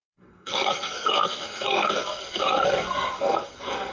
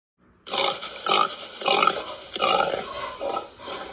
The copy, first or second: first